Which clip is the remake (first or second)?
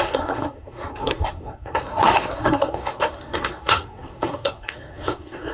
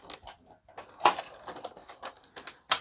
first